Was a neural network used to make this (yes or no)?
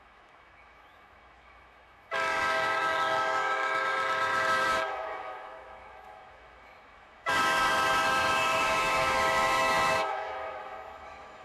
yes